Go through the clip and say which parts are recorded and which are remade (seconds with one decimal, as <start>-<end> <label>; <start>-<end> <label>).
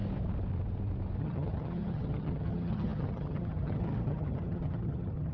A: 0.0-1.2 recorded; 1.2-5.3 remade